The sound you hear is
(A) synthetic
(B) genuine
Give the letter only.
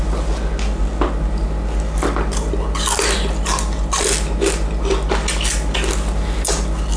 B